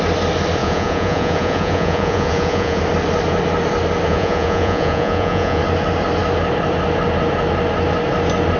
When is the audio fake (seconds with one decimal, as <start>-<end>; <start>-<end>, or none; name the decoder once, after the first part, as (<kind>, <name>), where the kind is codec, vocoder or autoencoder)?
0.6-2.8 (vocoder, Vocos); 4.1-5.6